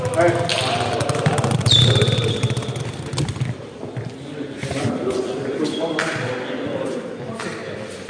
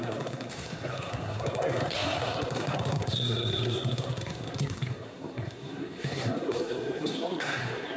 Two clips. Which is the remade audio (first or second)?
second